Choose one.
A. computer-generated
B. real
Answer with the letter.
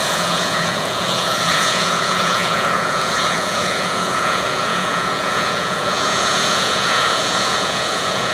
A